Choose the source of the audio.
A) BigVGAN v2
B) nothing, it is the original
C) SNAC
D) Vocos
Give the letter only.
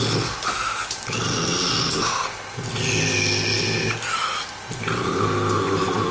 B